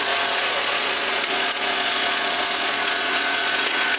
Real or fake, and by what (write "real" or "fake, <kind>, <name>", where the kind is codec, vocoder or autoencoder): fake, vocoder, Vocos